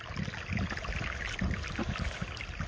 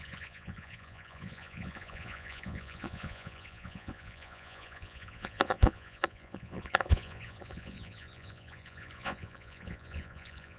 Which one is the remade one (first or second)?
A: second